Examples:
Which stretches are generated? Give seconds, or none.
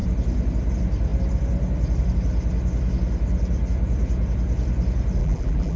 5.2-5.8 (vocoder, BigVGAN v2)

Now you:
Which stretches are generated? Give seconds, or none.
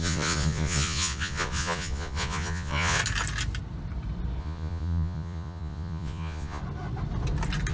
0.0-3.0 (vocoder, Vocos); 4.4-6.6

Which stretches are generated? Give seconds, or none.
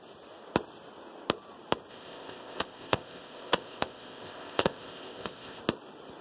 1.9-5.6 (codec, ZipCodec)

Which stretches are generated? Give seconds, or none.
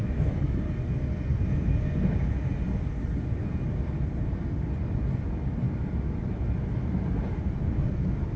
0.0-0.6 (autoencoder, DAC-VAE)